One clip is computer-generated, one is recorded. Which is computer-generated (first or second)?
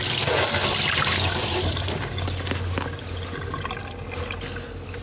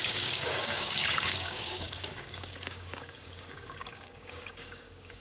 second